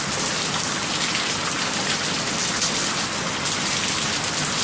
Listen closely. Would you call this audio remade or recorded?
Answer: recorded